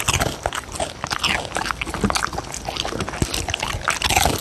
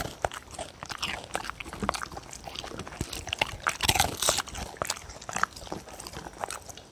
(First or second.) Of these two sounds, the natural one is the first